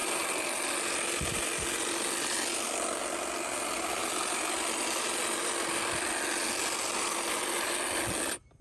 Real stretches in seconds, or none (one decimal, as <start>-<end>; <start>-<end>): 0.0-8.6